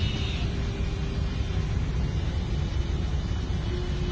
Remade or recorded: recorded